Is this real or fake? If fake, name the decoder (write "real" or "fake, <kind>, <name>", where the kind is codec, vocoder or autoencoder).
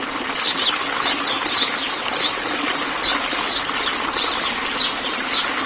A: real